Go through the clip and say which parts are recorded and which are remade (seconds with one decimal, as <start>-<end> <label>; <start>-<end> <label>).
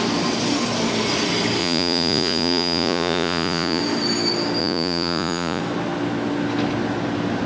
0.0-1.6 recorded; 1.6-3.8 remade; 3.8-4.6 recorded; 4.6-5.6 remade; 5.6-7.5 recorded